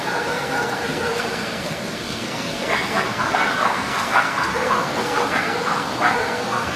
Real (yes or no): no